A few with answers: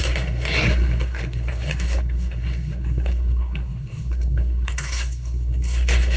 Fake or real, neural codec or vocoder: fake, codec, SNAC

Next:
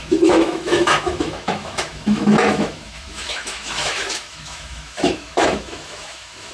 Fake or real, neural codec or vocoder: fake, autoencoder, DAC-VAE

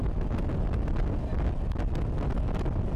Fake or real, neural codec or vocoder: real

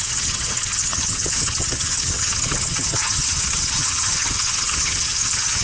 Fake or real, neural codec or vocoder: fake, vocoder, HiFi-GAN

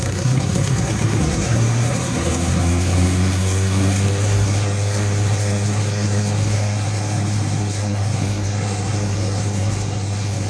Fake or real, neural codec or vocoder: fake, codec, SNAC